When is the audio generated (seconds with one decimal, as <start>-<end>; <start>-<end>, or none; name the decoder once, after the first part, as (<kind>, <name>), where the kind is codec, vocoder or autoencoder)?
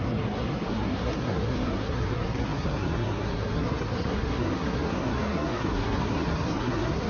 0.0-7.1 (codec, SNAC)